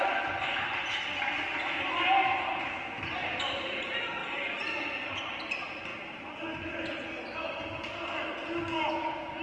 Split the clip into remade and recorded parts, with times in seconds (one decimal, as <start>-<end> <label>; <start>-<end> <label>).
0.0-9.4 recorded